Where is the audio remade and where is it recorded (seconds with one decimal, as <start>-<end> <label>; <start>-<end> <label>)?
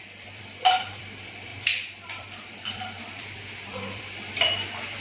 0.0-5.0 remade